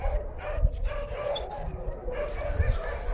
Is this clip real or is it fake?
real